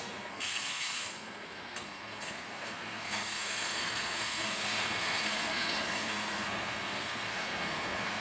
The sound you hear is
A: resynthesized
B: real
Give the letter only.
A